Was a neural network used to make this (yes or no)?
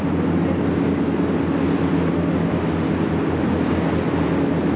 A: no